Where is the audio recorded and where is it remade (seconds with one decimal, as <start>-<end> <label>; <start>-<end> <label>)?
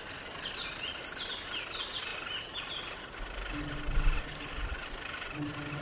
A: 0.0-5.8 recorded